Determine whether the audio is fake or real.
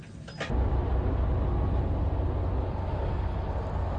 real